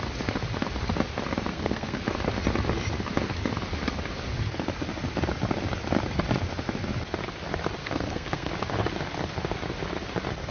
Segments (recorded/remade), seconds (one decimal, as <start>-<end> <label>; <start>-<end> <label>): 0.0-1.5 recorded; 1.5-2.0 remade; 2.0-7.8 recorded; 7.8-8.5 remade; 8.5-10.5 recorded